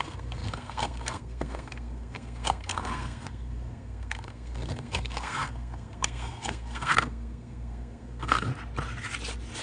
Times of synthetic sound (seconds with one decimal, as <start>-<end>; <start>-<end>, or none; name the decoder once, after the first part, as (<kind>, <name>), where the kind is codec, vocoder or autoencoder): 0.0-8.5 (codec, SNAC)